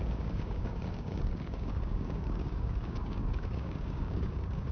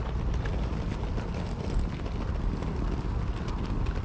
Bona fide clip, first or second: second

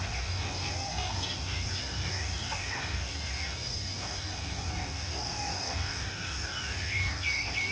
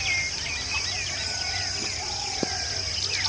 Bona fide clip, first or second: second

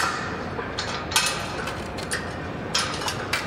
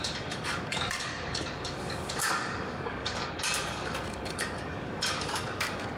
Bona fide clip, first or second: first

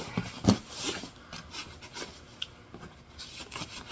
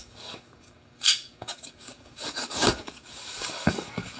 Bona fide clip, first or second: first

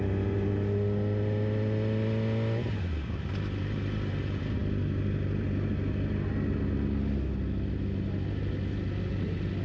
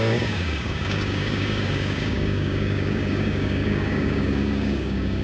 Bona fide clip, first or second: first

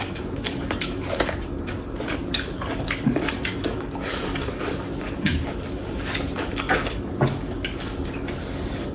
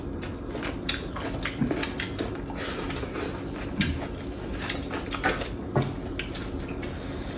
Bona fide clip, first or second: second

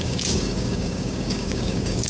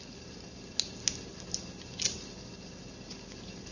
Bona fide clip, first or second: second